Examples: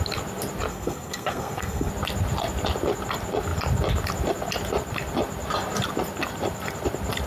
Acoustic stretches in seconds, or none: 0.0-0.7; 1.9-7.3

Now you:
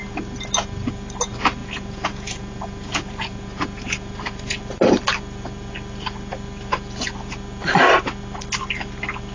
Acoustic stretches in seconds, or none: 0.0-1.6; 4.6-9.3

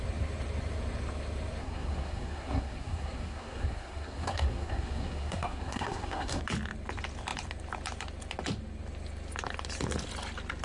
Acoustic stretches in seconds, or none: 0.0-1.6; 6.4-10.6

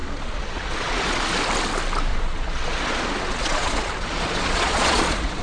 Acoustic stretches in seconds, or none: 1.2-2.1

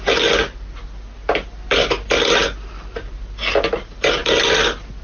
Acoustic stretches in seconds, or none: 0.0-5.0

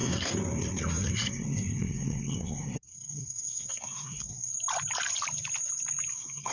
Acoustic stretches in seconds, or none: 4.5-6.1